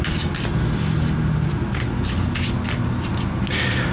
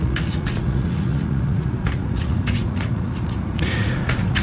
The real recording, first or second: first